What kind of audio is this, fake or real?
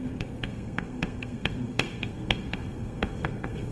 fake